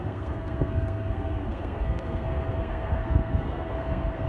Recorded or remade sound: remade